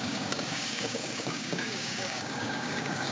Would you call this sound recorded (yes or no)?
no